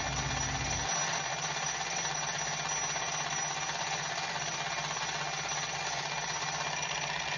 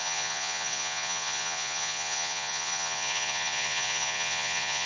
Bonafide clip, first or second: first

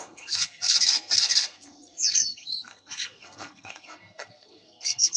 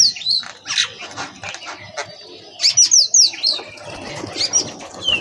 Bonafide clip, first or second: second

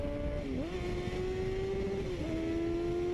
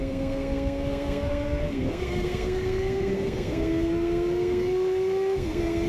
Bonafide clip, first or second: first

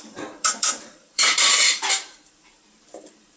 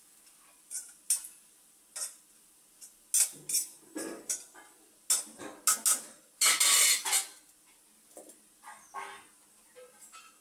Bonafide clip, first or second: second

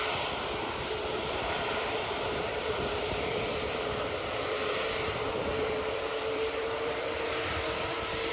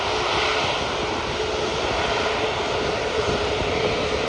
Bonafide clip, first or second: second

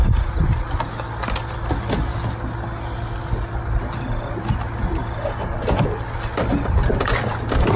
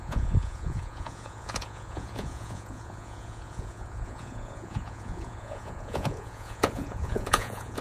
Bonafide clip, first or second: first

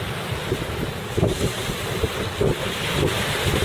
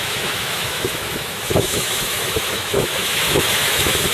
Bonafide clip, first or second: first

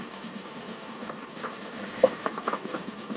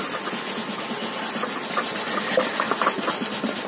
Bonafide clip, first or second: second